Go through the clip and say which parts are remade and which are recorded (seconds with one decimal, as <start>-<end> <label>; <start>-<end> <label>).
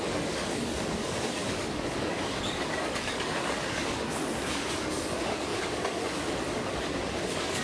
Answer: 0.0-7.6 remade